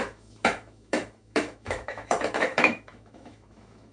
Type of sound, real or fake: fake